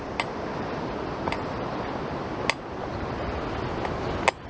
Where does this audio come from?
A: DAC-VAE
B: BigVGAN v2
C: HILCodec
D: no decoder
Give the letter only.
D